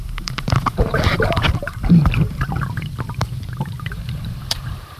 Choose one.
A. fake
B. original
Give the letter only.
A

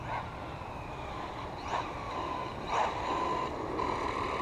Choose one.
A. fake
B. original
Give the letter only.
A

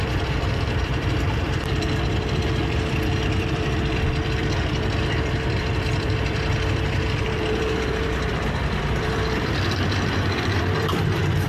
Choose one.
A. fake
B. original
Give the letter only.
A